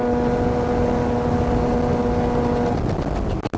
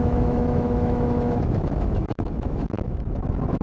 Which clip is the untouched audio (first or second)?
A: first